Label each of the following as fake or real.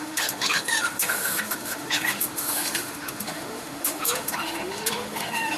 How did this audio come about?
fake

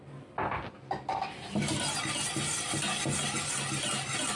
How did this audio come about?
real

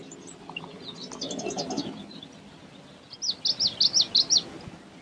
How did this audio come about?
real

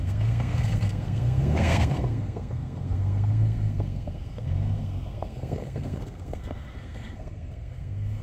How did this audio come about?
fake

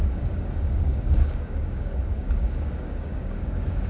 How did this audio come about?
fake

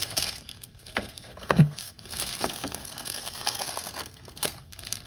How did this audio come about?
fake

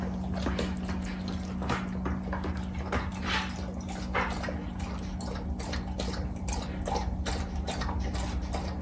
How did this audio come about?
real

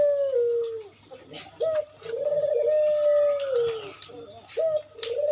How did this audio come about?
real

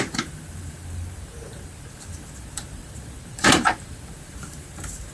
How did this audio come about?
fake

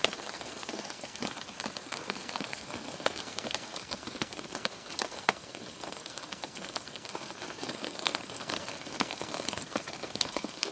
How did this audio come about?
fake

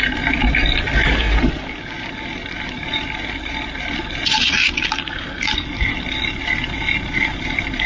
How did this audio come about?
real